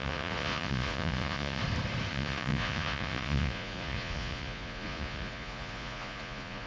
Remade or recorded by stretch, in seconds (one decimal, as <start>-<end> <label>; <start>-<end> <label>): 0.0-1.6 remade; 1.6-2.1 recorded; 2.1-6.7 remade